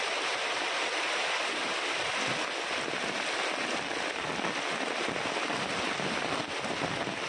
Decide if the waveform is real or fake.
real